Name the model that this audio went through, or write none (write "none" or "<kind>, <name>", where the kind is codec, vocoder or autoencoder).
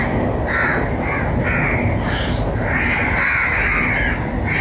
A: none